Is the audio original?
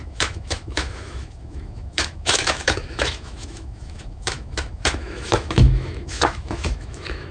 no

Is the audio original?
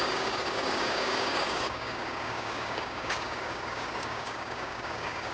no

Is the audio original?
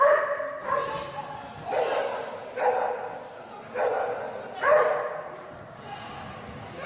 yes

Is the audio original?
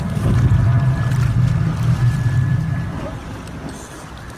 yes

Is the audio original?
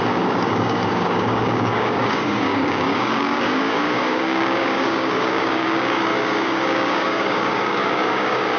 no